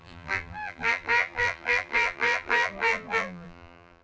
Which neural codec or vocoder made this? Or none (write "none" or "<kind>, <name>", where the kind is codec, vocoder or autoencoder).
vocoder, BigVGAN v2